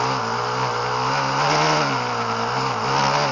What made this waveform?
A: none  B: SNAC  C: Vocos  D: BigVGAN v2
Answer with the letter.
A